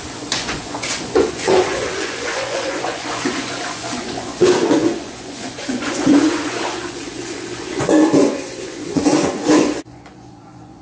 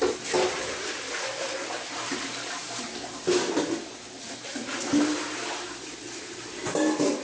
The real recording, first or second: second